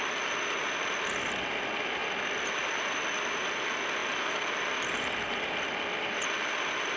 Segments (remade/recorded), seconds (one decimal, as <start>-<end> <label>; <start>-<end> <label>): 0.0-7.0 recorded

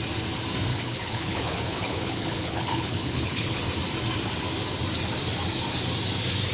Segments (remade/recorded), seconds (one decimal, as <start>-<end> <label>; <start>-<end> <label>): 0.0-0.7 recorded; 0.7-3.6 remade; 3.6-6.5 recorded

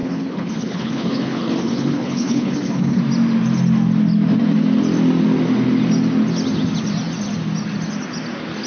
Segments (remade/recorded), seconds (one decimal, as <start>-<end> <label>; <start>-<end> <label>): 0.0-3.0 remade; 3.0-8.7 recorded